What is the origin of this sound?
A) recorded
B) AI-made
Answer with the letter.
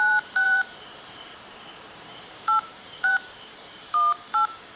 B